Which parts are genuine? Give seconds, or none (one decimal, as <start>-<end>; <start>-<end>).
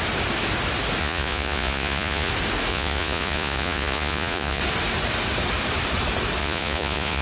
0.0-1.0; 2.3-2.7; 4.6-6.4